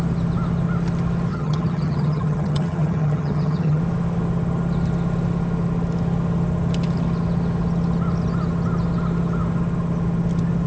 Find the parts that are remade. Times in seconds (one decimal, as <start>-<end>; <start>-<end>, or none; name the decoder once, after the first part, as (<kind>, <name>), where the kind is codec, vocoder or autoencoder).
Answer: 1.3-3.8 (vocoder, HiFi-GAN)